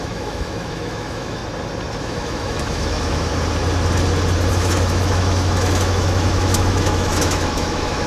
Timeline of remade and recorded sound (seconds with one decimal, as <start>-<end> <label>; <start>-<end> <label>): 0.0-1.4 remade; 1.4-2.0 recorded; 2.0-3.3 remade; 3.3-4.5 recorded; 4.5-8.1 remade